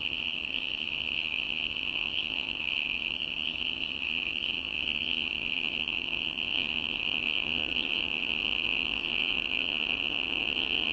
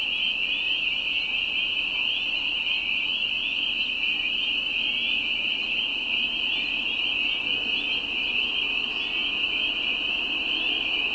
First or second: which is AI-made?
first